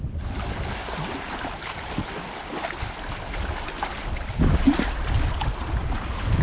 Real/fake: real